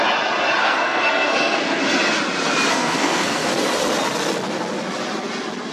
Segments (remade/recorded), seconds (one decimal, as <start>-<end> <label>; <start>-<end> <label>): 0.0-0.6 recorded; 0.6-1.8 remade; 1.8-2.7 recorded; 2.7-3.5 remade; 3.5-5.7 recorded